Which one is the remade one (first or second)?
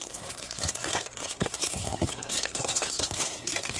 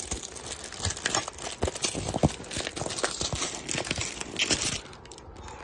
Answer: first